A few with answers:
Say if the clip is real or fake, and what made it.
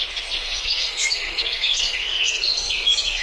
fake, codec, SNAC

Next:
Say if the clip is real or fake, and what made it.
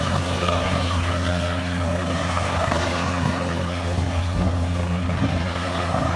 fake, codec, SNAC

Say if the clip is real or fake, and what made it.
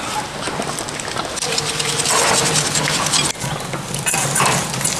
real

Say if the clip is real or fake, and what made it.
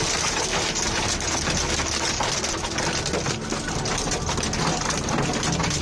real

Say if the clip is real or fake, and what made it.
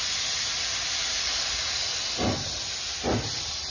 real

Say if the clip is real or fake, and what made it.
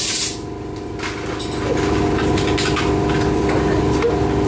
real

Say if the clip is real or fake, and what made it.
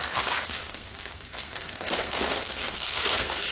fake, codec, SNAC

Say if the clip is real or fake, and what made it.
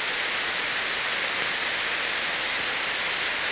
real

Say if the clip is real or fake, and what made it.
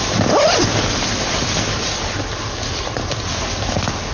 real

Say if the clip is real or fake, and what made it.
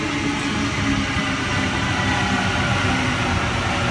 real